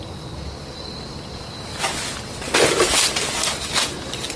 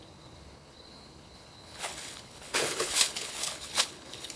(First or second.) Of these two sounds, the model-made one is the second